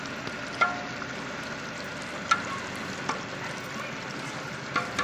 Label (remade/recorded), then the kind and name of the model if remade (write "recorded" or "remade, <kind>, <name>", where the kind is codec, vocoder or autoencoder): recorded